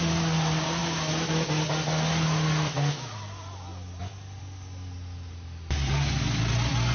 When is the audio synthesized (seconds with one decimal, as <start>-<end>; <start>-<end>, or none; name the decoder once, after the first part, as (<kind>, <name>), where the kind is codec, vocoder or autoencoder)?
none